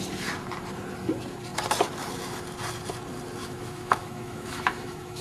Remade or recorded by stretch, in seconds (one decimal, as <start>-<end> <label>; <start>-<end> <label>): 0.0-3.4 recorded; 3.4-5.2 remade